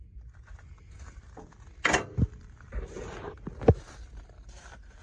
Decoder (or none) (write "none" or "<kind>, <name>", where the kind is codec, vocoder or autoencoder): none